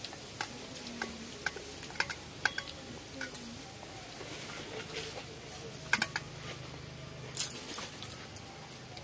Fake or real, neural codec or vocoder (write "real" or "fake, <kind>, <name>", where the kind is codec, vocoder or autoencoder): real